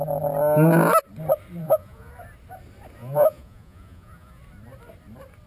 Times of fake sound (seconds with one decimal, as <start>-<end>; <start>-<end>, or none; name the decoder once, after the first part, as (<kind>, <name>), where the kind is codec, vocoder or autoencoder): 1.6-2.1 (vocoder, Vocos); 3.0-4.4